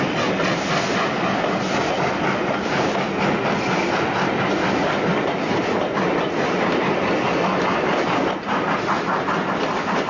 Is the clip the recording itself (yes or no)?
yes